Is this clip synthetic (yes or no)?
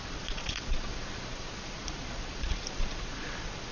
yes